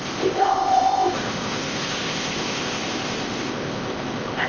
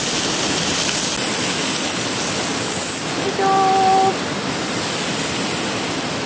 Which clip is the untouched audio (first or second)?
second